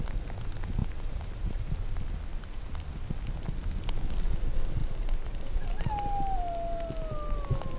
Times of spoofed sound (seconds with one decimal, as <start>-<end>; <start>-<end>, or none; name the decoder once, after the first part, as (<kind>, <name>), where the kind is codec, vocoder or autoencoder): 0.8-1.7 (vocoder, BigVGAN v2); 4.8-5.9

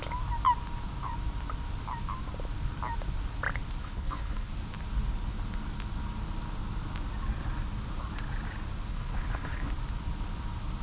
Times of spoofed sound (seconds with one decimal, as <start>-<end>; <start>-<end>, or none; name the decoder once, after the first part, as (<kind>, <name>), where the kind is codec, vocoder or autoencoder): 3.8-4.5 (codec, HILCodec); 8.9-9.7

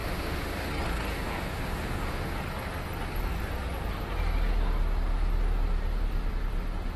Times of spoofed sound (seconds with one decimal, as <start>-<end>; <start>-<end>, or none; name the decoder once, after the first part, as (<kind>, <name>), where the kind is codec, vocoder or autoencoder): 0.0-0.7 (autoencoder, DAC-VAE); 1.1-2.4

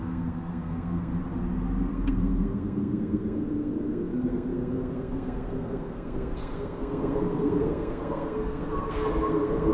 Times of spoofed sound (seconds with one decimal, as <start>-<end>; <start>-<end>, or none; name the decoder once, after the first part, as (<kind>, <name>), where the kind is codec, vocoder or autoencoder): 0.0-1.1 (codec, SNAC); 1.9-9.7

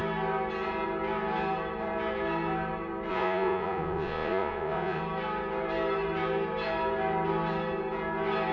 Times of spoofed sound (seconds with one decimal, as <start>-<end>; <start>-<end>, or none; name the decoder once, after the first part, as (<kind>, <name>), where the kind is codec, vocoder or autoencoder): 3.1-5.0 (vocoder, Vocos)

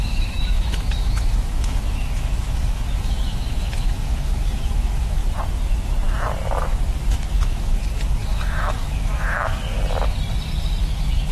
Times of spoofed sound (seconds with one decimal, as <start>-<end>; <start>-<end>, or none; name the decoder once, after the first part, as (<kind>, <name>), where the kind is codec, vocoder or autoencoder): 0.0-5.2 (autoencoder, DAC-VAE); 7.1-9.7; 10.8-11.3